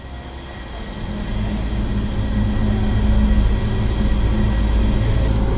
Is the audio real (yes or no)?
yes